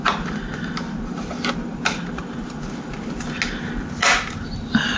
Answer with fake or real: real